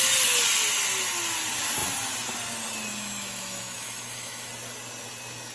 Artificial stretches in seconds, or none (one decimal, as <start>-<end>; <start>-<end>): 2.9-4.5